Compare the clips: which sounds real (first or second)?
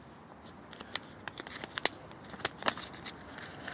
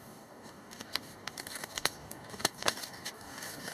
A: first